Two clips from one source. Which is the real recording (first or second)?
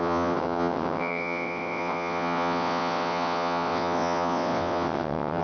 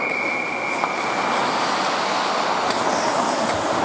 second